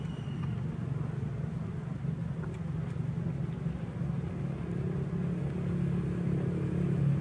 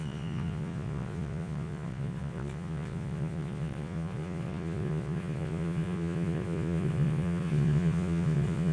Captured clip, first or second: first